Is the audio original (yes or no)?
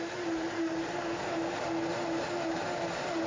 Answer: no